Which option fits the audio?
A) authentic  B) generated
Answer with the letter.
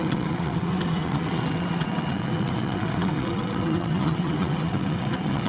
B